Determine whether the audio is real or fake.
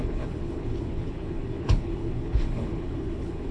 fake